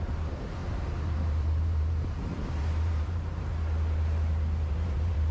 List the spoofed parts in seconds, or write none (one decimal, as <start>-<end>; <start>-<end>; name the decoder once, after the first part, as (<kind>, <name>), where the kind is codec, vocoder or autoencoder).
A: 0.0-3.5 (vocoder, BigVGAN v2); 4.7-5.3